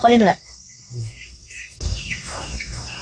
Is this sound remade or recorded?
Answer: remade